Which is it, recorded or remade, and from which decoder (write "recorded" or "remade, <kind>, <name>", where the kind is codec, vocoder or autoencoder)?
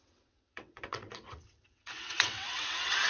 remade, vocoder, WaveNeXt